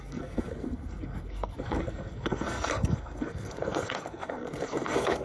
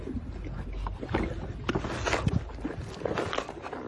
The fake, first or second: first